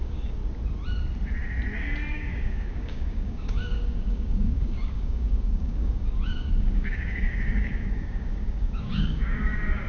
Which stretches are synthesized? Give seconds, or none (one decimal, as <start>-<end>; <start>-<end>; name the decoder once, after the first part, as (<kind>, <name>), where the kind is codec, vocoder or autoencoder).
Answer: 0.0-0.4 (codec, DAC); 2.1-9.9